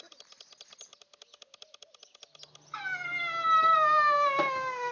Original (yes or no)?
yes